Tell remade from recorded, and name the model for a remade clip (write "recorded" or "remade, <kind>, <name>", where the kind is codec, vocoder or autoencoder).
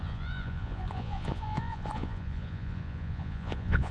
remade, vocoder, Vocos